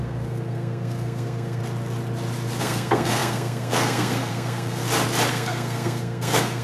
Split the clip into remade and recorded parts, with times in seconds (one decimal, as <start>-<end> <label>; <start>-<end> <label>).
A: 0.0-1.6 remade; 1.6-2.6 recorded; 2.6-4.8 remade; 4.8-5.3 recorded; 5.3-6.6 remade